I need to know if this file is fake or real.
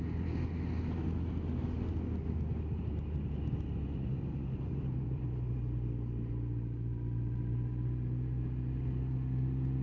real